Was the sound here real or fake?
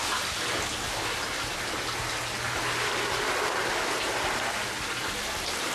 real